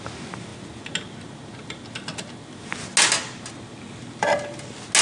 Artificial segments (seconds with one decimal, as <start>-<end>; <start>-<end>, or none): none